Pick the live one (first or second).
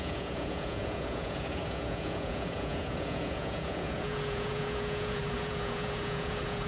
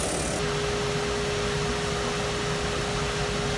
second